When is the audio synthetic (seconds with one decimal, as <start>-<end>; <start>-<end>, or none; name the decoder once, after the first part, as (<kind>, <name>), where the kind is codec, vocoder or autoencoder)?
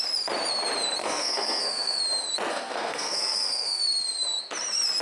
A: 1.0-2.0 (codec, SNAC); 2.5-3.8